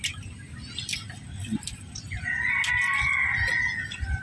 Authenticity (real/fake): real